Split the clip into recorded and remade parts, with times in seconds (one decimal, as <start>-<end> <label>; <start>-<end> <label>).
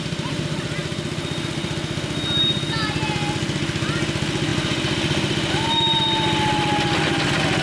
0.0-7.6 recorded